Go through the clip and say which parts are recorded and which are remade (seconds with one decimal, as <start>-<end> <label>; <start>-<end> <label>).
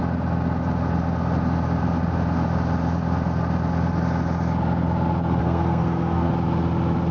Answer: 0.0-5.4 recorded; 5.4-6.3 remade; 6.3-7.1 recorded